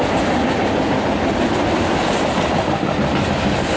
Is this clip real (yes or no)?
yes